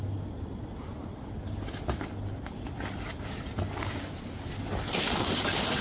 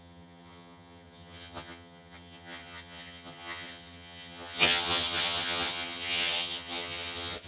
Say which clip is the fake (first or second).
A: second